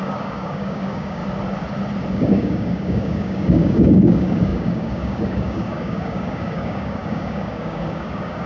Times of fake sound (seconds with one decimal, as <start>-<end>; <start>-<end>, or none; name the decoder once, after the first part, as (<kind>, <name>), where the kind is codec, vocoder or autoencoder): 0.0-1.2 (codec, DAC); 2.1-8.5